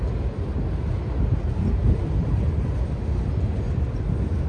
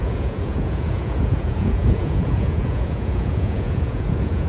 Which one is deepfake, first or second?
second